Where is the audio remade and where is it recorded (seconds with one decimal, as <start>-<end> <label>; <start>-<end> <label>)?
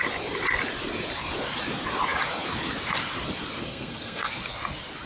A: 0.0-3.6 recorded; 3.6-4.3 remade; 4.3-5.1 recorded